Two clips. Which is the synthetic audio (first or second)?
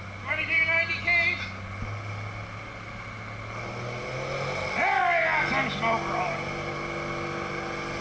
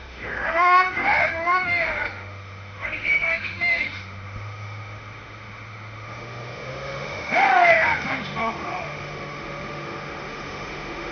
second